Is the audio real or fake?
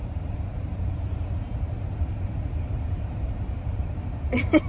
fake